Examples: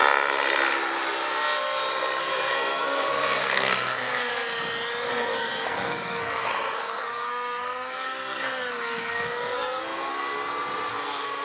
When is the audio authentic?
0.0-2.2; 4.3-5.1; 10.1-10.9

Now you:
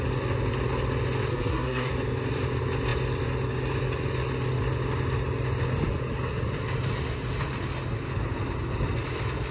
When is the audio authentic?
0.0-1.3; 1.9-9.5

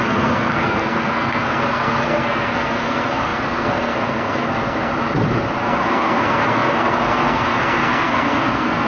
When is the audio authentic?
4.9-5.6

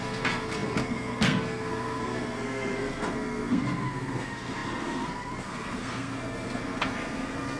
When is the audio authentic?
none